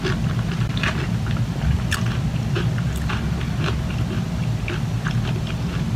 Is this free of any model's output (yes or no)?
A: yes